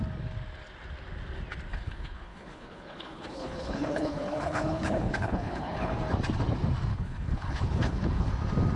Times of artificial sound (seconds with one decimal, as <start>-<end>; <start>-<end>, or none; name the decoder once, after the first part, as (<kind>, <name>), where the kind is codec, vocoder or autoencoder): 1.7-5.9 (codec, HILCodec); 6.9-8.3